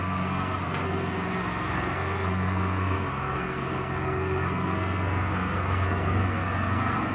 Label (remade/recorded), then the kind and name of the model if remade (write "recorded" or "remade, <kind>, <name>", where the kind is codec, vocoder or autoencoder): remade, codec, SNAC